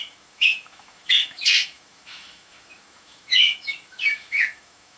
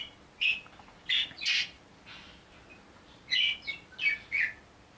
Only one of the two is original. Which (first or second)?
second